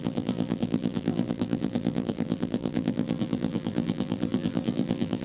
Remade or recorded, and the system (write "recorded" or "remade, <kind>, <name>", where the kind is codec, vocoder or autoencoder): remade, vocoder, BigVGAN v2